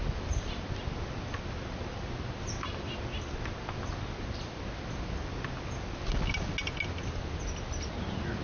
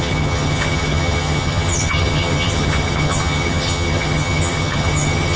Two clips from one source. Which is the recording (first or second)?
first